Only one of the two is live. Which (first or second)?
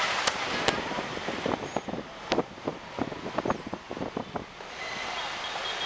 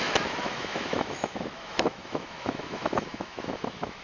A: first